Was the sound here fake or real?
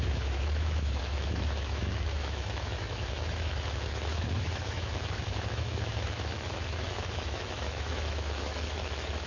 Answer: fake